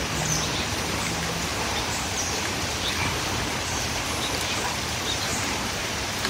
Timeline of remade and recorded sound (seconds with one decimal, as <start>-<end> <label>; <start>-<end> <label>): 0.0-6.3 recorded